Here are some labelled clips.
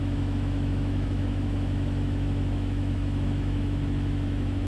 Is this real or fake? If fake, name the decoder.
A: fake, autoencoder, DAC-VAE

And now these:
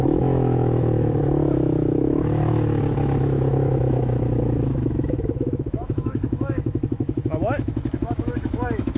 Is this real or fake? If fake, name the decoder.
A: fake, autoencoder, DAC-VAE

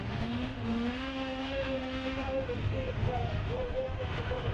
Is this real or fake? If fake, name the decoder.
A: fake, autoencoder, DAC-VAE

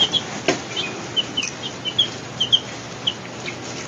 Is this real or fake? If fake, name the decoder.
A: real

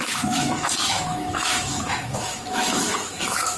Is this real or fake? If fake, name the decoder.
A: fake, autoencoder, DAC-VAE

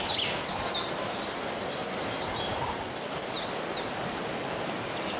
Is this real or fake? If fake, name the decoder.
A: real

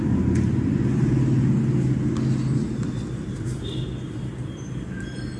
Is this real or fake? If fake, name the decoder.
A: real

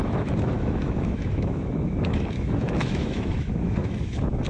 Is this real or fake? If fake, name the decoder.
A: fake, autoencoder, DAC-VAE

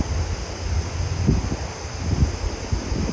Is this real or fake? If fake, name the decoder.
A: real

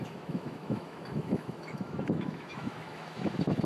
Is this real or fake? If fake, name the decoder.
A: fake, autoencoder, DAC-VAE